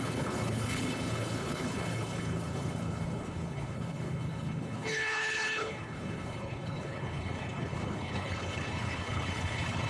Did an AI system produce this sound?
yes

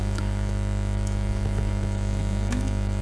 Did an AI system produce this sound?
yes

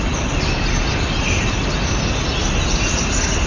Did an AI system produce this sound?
no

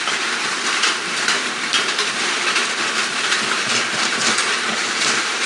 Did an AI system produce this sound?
yes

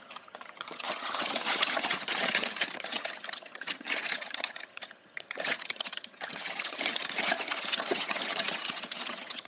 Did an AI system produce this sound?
yes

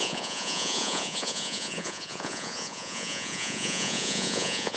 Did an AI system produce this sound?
yes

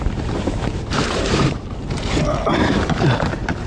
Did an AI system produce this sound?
yes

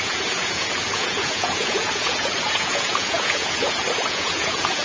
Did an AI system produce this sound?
yes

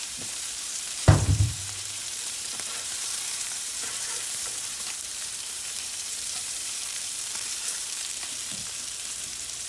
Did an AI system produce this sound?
yes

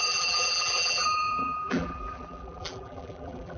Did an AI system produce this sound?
yes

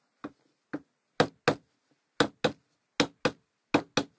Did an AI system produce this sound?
no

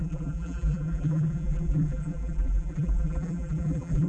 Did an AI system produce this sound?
yes